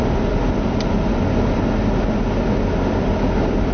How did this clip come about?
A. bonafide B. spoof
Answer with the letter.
A